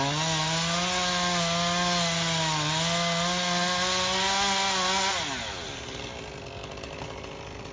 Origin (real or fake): real